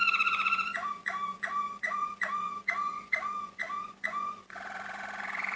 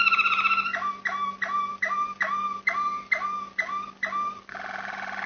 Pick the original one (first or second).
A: second